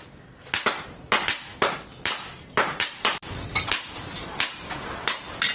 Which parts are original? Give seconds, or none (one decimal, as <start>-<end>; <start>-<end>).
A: 0.0-1.5; 3.6-5.5

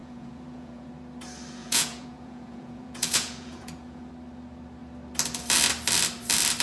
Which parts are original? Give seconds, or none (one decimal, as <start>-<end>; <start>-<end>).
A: 0.9-1.6; 4.1-6.6